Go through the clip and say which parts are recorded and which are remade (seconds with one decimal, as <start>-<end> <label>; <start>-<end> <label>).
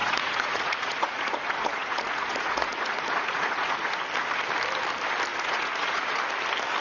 0.0-4.0 remade; 4.0-5.3 recorded; 5.3-6.2 remade; 6.2-6.8 recorded